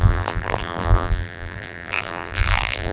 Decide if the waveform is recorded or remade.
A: remade